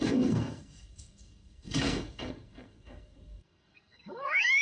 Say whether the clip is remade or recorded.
remade